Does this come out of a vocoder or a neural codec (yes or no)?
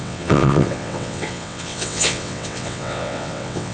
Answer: yes